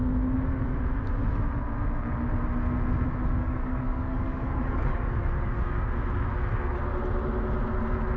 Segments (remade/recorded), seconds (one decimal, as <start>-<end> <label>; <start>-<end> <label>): 0.0-3.4 recorded; 3.4-5.9 remade; 5.9-8.2 recorded